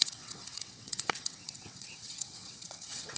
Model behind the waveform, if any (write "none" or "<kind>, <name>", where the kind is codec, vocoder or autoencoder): vocoder, WaveNeXt